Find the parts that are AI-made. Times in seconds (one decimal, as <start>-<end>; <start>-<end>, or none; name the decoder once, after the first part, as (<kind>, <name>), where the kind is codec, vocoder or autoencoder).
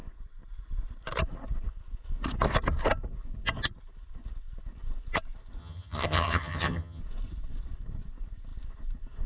5.6-7.0 (vocoder, HiFi-GAN)